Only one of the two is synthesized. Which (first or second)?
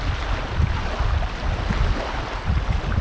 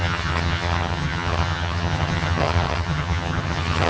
second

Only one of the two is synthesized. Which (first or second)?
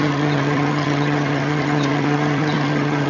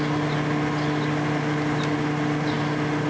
first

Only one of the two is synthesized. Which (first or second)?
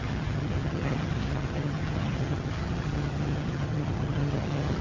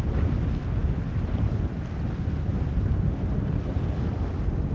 first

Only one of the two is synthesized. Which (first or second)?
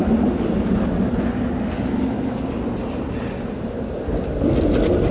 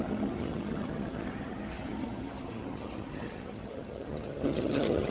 second